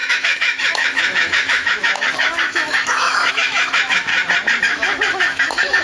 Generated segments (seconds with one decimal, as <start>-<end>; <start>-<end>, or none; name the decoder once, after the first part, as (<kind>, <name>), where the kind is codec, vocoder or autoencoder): 0.0-4.1 (autoencoder, DAC-VAE); 4.6-5.8